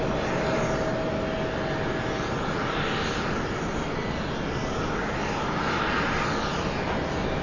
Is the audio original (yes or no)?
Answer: yes